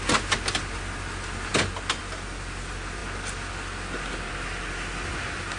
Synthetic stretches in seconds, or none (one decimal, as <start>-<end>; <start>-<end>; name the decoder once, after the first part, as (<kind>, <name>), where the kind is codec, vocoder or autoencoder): none

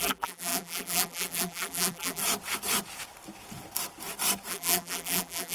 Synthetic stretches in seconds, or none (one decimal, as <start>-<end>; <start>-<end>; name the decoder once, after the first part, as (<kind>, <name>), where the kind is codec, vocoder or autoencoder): 0.0-2.2 (vocoder, BigVGAN v2); 4.5-5.5